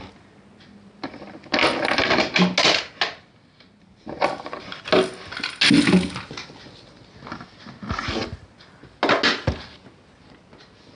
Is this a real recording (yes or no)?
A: yes